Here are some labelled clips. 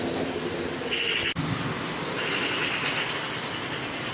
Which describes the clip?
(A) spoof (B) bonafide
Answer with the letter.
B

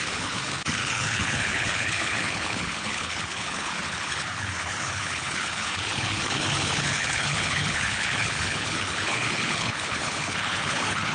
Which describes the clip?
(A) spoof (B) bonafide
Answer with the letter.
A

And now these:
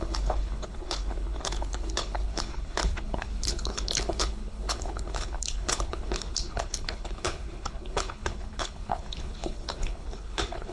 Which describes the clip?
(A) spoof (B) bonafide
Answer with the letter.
A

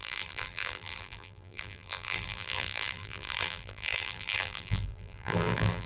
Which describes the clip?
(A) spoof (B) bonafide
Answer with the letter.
A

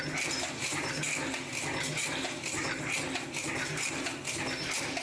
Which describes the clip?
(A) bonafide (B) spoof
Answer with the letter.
A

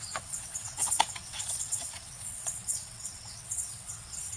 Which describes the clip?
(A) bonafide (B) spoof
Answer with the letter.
B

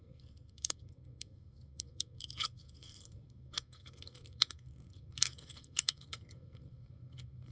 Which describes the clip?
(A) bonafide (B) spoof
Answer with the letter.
B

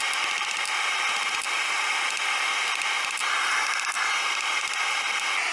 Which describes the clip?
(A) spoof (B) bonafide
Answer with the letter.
B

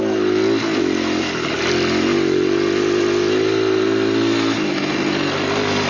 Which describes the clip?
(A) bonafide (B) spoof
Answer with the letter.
A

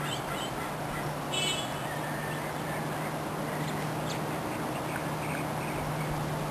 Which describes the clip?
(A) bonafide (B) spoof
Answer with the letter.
A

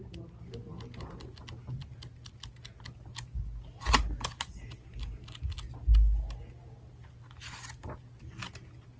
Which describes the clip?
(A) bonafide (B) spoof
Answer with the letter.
A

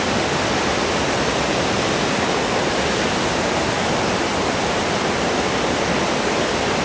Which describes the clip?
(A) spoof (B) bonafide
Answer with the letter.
B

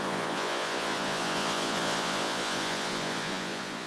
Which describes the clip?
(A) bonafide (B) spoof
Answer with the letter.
B